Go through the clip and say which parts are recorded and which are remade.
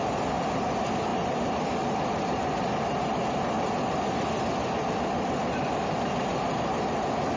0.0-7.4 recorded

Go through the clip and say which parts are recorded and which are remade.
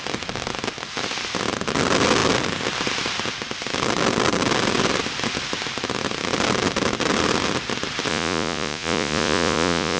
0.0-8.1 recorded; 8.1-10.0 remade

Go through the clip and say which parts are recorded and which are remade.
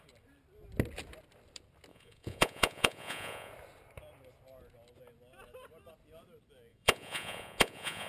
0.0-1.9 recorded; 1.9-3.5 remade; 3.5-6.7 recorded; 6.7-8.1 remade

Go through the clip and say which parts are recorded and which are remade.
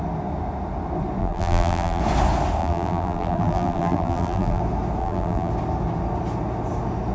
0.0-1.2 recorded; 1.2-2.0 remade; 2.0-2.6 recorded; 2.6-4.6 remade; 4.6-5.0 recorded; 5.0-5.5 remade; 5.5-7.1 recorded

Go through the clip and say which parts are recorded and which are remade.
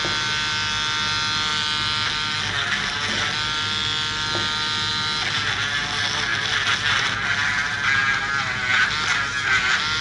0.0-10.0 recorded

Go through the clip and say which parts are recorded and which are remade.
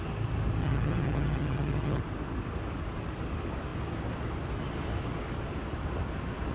0.0-0.6 recorded; 0.6-2.0 remade; 2.0-6.5 recorded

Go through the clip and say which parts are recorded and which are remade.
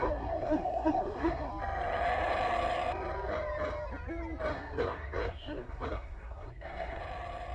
0.0-1.5 remade; 1.5-4.5 recorded; 4.5-7.0 remade; 7.0-7.5 recorded